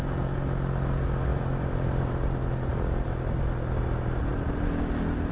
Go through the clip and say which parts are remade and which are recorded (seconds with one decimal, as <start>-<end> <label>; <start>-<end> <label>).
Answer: 0.0-1.3 recorded; 1.3-2.1 remade; 2.1-2.7 recorded; 2.7-3.4 remade; 3.4-5.3 recorded